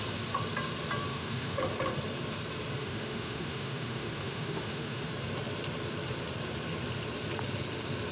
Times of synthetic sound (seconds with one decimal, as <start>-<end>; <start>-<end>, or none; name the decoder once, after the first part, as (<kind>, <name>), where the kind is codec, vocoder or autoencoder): 1.1-1.6 (autoencoder, DAC-VAE); 2.8-5.1